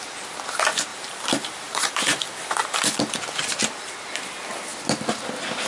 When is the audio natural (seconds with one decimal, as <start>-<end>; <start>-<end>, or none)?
0.0-0.9; 3.0-5.7